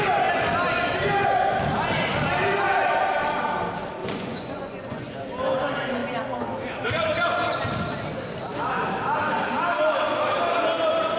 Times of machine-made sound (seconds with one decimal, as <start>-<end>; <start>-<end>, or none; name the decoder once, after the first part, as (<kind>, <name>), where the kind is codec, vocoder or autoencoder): 4.0-5.1 (vocoder, Vocos)